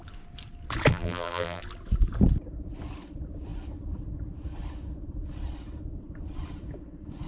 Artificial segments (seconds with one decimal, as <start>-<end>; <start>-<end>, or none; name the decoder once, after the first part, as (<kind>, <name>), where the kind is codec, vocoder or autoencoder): 0.9-1.6 (vocoder, BigVGAN v2)